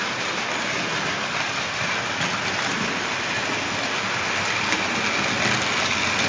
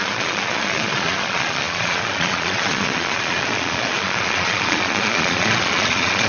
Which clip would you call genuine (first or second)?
first